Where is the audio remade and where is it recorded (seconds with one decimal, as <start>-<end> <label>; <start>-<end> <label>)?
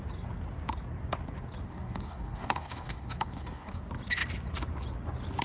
0.0-1.7 recorded; 1.7-3.8 remade; 3.8-5.4 recorded